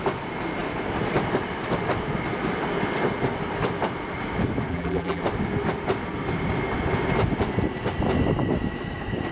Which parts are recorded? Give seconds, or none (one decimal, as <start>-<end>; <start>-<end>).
0.0-4.7; 5.2-9.3